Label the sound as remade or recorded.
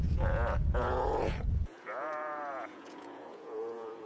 remade